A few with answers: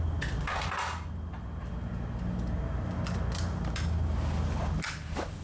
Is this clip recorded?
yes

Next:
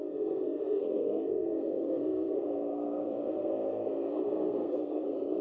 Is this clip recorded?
no